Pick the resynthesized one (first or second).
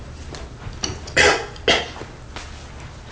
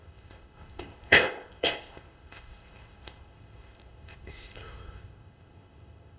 second